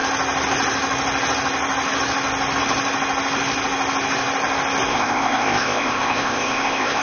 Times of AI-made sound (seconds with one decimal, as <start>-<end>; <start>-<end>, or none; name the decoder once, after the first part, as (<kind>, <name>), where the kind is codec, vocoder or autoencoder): 4.9-7.0 (codec, ZipCodec)